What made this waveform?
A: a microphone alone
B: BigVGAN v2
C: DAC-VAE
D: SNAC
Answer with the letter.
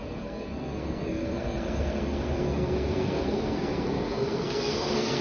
D